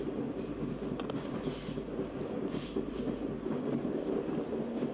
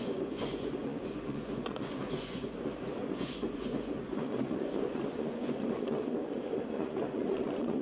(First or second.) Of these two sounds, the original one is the first